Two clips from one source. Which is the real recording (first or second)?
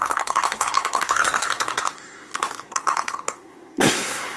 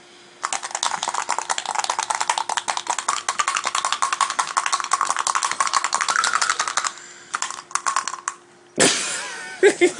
second